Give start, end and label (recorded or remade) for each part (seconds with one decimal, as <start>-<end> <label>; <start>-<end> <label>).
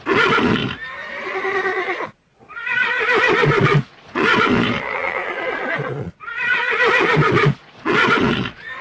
0.0-0.6 remade; 0.6-1.1 recorded; 1.1-8.8 remade